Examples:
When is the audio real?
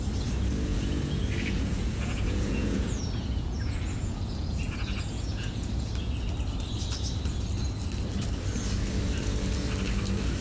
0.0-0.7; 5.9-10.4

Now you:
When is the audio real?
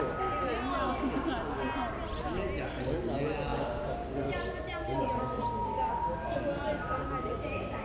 0.0-7.8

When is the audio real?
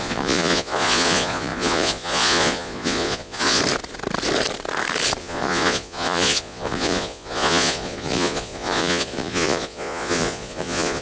3.6-5.2